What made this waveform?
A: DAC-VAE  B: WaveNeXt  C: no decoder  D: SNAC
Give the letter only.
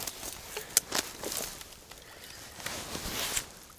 C